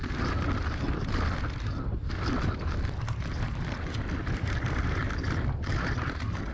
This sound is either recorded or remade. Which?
remade